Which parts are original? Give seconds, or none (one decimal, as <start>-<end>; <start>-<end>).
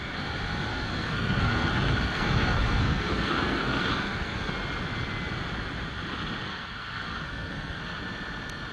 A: 0.0-0.7; 4.5-6.4; 7.8-8.7